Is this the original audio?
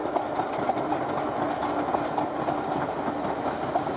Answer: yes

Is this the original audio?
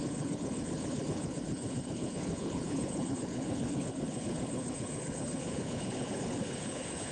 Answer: no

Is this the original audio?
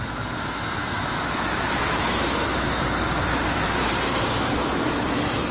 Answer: no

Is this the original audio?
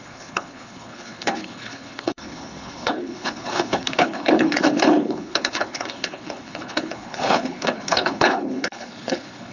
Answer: no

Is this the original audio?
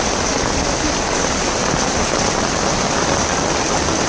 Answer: yes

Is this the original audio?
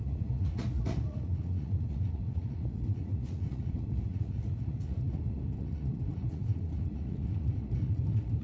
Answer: no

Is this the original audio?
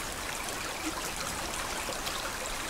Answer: no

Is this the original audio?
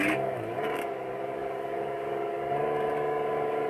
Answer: no